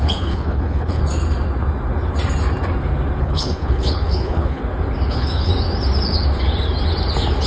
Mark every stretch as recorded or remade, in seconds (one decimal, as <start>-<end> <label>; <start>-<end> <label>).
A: 0.0-1.0 remade; 1.0-3.2 recorded; 3.2-4.6 remade; 4.6-5.1 recorded; 5.1-5.5 remade; 5.5-7.5 recorded